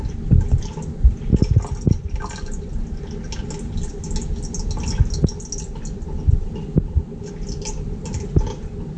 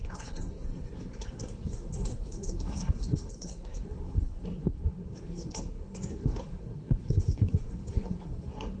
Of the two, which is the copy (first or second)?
second